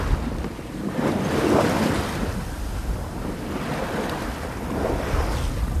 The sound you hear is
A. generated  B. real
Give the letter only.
B